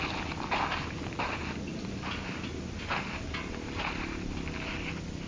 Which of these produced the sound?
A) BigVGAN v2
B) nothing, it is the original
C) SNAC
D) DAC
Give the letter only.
B